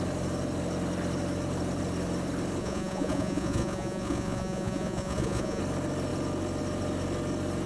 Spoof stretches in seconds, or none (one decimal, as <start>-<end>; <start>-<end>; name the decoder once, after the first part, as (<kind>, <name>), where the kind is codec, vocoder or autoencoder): 2.6-5.6 (vocoder, Vocos)